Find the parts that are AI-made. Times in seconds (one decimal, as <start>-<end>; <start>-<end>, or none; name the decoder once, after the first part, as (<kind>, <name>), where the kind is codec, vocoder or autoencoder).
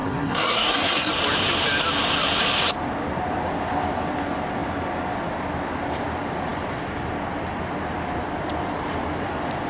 0.0-1.1 (codec, SNAC)